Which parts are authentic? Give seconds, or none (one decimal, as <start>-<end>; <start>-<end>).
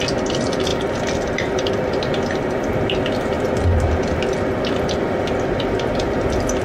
0.0-6.6